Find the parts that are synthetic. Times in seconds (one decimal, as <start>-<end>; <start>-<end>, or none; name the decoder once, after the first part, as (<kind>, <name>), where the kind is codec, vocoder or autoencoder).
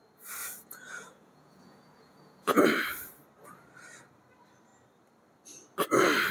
0.4-2.6 (vocoder, Vocos)